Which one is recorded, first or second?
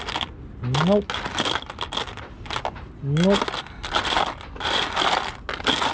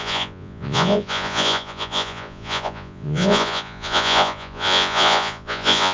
first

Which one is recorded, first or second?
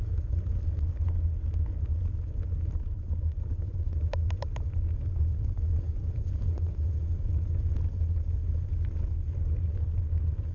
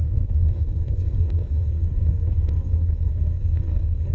first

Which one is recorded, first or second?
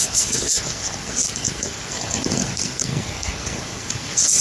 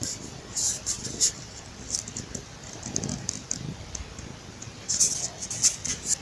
second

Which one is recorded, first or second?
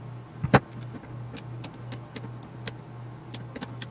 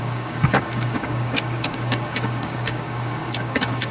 first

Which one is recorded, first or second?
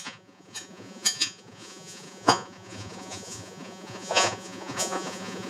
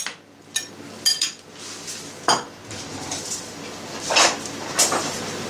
second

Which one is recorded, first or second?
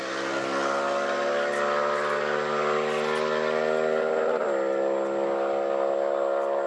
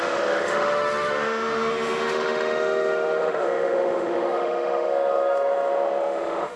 first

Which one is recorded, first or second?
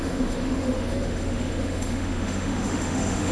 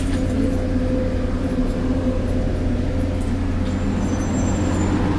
second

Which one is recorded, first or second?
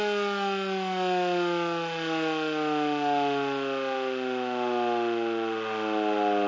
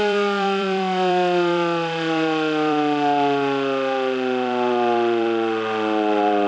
first